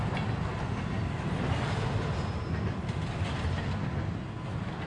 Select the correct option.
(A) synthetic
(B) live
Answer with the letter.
B